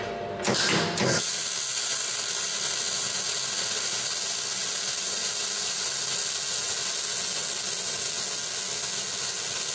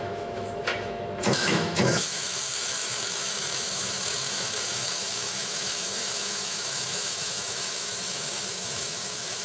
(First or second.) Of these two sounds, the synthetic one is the second